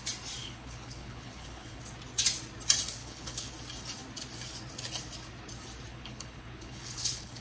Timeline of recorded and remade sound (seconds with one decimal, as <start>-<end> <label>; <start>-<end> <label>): 0.0-0.4 recorded; 0.4-1.8 remade; 1.8-3.0 recorded; 3.0-3.5 remade; 3.5-5.9 recorded; 5.9-7.4 remade